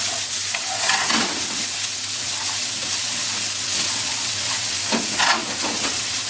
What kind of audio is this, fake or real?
fake